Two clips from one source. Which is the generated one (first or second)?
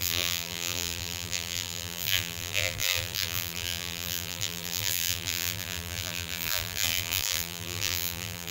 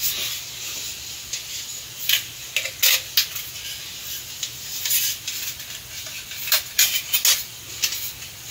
first